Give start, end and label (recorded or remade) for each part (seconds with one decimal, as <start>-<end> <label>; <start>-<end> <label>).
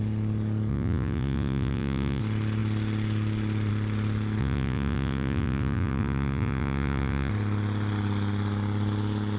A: 0.0-0.7 recorded; 0.7-2.2 remade; 2.2-4.4 recorded; 4.4-7.3 remade; 7.3-9.4 recorded